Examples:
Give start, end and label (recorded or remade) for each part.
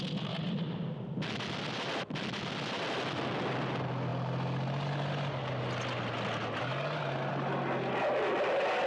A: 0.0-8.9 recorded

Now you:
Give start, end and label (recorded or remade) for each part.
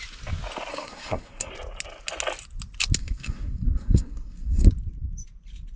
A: 0.0-0.7 recorded; 0.7-1.5 remade; 1.5-3.0 recorded; 3.0-4.7 remade; 4.7-5.8 recorded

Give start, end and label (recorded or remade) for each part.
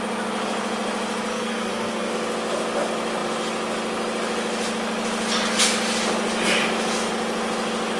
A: 0.0-1.3 recorded; 1.3-2.1 remade; 2.1-8.0 recorded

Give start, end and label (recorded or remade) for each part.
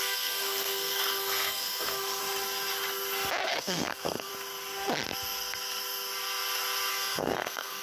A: 0.0-2.2 remade; 2.2-3.4 recorded; 3.4-4.3 remade; 4.3-6.9 recorded; 6.9-7.8 remade